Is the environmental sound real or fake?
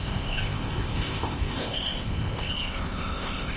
fake